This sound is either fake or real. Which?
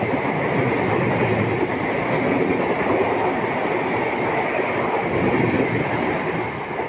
real